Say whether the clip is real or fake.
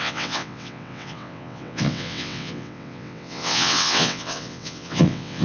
fake